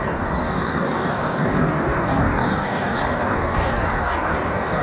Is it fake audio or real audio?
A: fake